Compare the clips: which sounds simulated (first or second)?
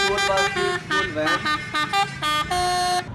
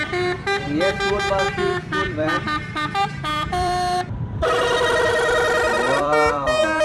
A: second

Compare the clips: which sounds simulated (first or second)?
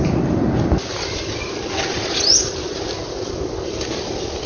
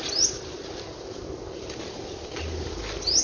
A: first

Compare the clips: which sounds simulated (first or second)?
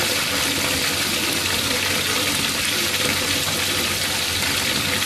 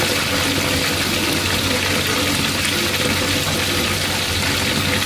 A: first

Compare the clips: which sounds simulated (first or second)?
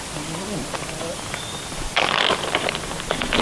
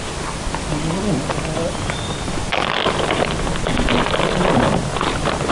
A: first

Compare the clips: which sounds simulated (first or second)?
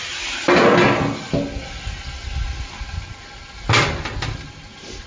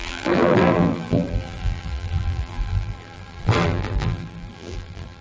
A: second